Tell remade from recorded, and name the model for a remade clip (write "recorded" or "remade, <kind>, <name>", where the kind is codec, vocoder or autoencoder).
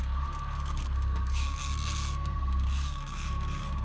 remade, codec, SNAC